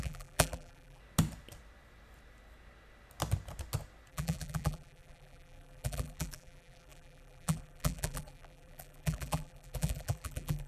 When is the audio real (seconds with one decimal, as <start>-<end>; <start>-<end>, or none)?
1.0-4.1